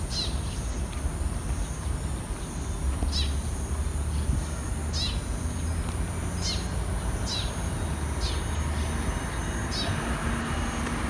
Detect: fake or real real